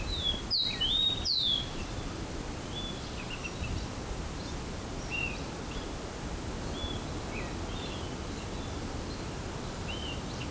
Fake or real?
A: real